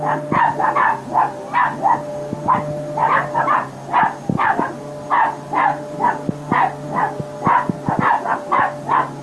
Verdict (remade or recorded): recorded